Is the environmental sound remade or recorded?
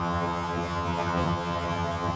remade